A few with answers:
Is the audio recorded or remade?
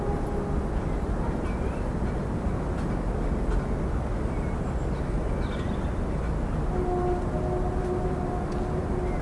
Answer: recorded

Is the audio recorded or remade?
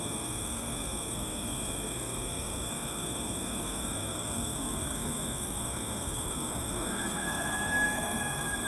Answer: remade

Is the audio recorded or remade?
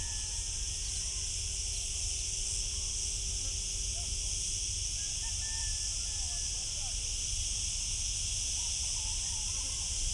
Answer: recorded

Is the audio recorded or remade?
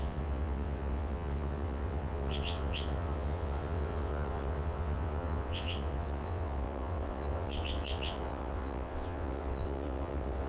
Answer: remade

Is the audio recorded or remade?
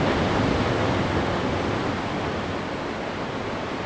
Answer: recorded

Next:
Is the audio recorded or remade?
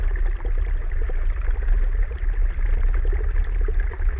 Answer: recorded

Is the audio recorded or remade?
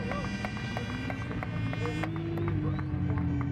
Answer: recorded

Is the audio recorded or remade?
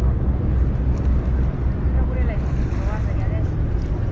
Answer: recorded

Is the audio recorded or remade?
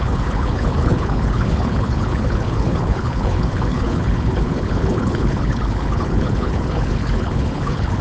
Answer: remade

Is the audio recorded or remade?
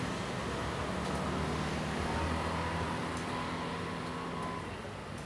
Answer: recorded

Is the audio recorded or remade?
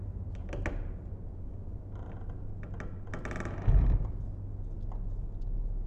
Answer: recorded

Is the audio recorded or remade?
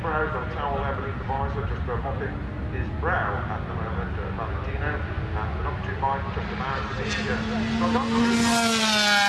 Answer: recorded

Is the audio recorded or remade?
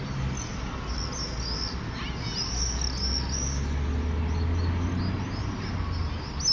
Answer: recorded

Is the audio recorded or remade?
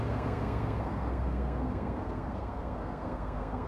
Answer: remade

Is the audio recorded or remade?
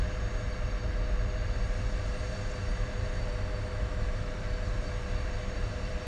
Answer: remade